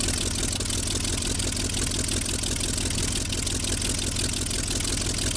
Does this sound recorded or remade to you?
recorded